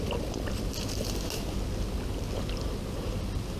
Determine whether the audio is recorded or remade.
recorded